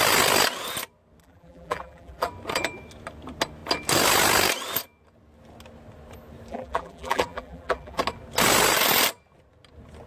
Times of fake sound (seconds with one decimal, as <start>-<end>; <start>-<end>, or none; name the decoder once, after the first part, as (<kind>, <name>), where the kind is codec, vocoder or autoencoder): 1.2-2.3 (vocoder, BigVGAN v2); 6.5-8.0